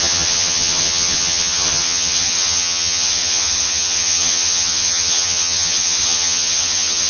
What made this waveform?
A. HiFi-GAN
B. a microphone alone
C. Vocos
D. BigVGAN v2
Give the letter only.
A